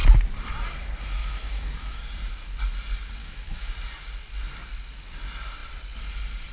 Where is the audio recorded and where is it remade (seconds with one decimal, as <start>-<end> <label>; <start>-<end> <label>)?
0.0-1.2 recorded; 1.2-2.0 remade; 2.0-3.2 recorded; 3.2-3.7 remade; 3.7-6.5 recorded